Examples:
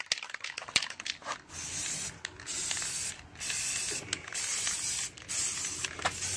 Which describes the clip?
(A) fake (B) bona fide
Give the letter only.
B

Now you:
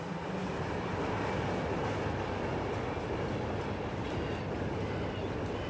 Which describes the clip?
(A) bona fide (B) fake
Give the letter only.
A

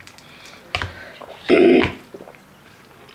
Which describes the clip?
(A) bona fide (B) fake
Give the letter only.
A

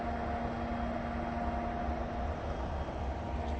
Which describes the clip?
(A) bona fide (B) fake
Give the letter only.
A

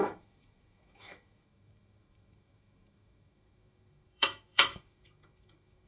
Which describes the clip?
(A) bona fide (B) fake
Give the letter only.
B